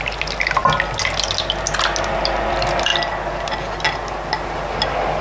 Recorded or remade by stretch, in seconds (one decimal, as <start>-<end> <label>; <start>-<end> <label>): 0.0-5.2 recorded